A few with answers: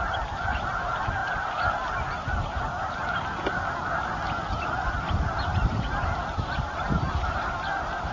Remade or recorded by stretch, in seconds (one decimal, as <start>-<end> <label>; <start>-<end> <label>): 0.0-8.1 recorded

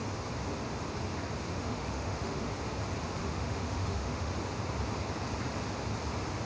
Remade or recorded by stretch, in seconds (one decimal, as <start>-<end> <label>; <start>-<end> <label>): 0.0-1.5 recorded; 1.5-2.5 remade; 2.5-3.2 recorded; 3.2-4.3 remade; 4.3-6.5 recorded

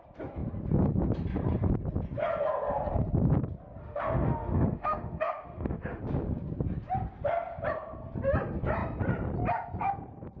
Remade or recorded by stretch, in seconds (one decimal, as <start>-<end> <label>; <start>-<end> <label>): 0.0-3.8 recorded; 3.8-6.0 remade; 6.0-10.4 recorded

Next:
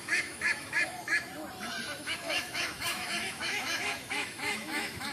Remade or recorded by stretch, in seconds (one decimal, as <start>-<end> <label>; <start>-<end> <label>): 0.0-1.3 remade; 1.3-2.0 recorded; 2.0-5.1 remade

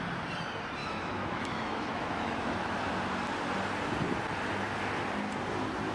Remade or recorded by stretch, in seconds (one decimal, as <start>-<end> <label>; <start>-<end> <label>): 0.0-0.8 recorded; 0.8-2.9 remade; 2.9-5.9 recorded